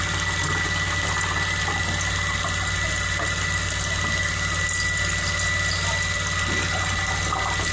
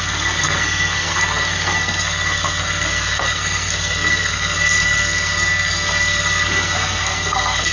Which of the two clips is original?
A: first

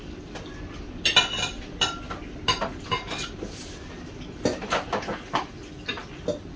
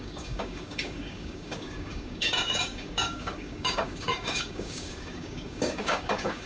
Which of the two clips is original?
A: first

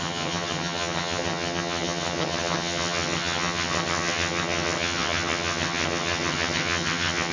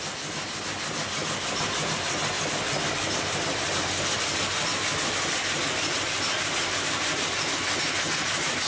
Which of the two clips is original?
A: second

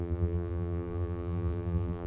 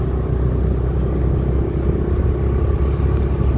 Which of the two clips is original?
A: second